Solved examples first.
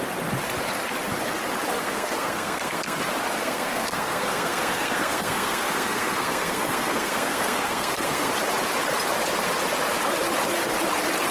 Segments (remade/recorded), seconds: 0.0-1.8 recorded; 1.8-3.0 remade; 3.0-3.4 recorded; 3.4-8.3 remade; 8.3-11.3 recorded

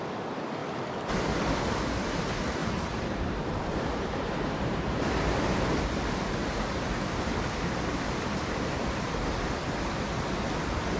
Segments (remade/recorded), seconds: 0.0-2.6 recorded; 2.6-5.7 remade; 5.7-6.4 recorded; 6.4-9.4 remade; 9.4-11.0 recorded

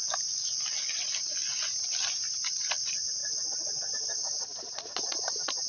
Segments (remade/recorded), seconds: 0.0-5.7 recorded

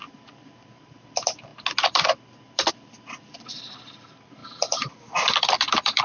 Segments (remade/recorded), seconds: 0.0-1.5 remade; 1.5-2.7 recorded; 2.7-6.0 remade

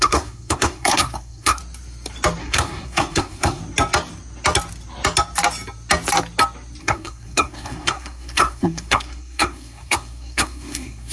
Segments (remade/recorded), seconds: 0.0-1.6 remade; 1.6-2.4 recorded; 2.4-3.6 remade; 3.6-6.8 recorded; 6.8-11.1 remade